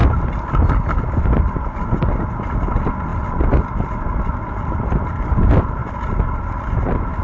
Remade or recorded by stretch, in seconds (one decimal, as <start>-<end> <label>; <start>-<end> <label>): 0.0-7.2 recorded

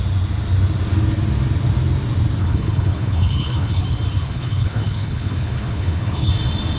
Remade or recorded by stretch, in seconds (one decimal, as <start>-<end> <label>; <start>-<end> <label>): 0.0-2.4 recorded; 2.4-3.8 remade; 3.8-4.2 recorded; 4.2-6.3 remade; 6.3-6.8 recorded